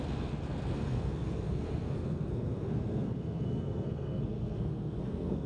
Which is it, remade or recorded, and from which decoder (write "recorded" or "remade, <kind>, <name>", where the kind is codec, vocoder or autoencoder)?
remade, codec, SNAC